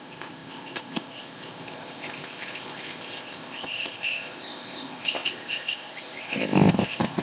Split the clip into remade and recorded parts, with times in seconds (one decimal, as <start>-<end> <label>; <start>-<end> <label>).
0.0-7.2 remade